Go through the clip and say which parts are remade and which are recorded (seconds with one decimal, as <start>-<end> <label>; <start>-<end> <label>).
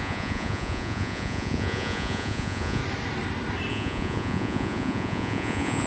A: 0.0-2.8 remade; 2.8-3.7 recorded; 3.7-5.9 remade